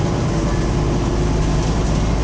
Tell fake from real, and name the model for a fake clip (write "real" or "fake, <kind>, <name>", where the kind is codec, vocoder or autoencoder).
real